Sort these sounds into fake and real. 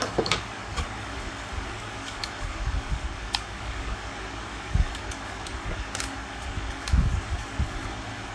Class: fake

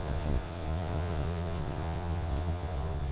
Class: fake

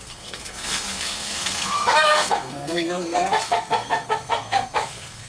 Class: fake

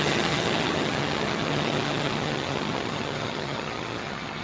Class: fake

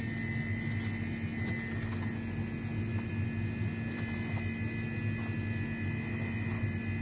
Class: real